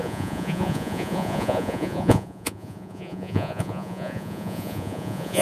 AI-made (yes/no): yes